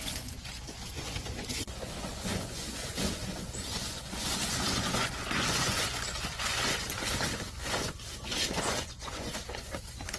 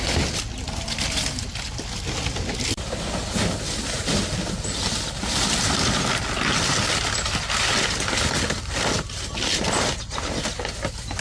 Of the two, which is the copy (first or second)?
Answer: first